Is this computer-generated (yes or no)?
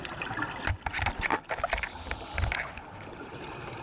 yes